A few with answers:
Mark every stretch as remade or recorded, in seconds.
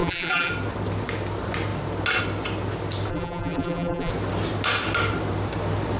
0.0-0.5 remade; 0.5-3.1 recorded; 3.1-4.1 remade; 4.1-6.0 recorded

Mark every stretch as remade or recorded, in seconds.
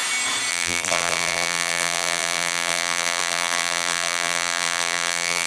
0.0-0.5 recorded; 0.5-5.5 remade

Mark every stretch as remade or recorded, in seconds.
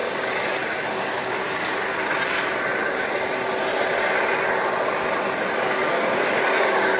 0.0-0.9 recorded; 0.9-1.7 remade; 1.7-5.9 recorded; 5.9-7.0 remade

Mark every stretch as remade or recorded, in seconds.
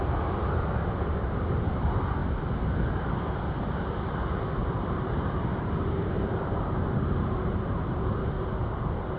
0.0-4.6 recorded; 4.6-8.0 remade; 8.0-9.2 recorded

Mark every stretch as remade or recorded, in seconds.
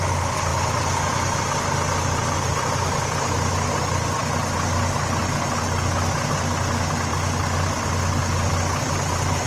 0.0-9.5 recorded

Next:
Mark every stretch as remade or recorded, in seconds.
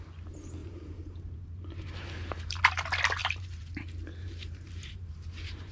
0.0-0.6 recorded; 0.6-2.6 remade; 2.6-3.2 recorded; 3.2-5.7 remade